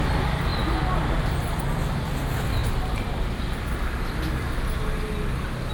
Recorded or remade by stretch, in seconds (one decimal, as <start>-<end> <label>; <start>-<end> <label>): 0.0-5.7 recorded